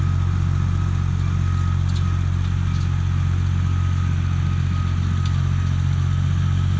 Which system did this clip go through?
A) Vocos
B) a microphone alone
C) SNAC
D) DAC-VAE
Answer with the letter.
B